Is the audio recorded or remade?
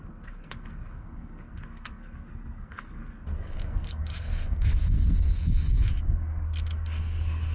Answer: remade